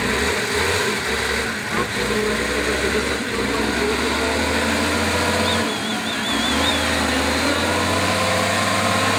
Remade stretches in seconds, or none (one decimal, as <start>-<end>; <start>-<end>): none